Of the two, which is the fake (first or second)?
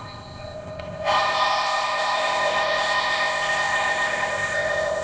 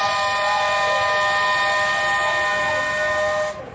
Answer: first